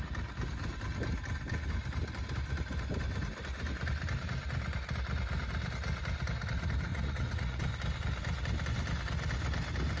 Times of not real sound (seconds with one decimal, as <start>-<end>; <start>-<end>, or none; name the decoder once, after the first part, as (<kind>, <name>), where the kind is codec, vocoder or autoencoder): 6.9-7.6 (vocoder, Vocos)